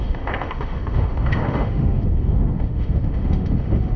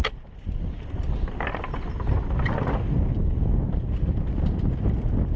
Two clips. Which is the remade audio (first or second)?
first